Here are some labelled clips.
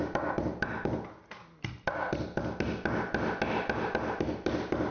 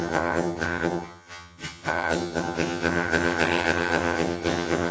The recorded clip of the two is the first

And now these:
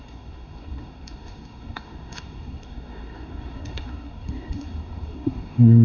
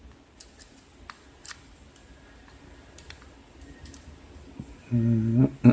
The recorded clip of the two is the second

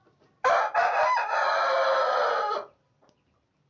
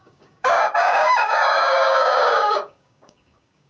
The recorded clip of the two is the first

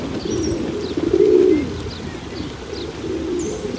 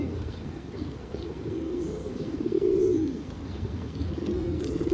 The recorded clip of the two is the first